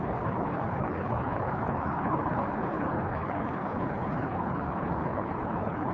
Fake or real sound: fake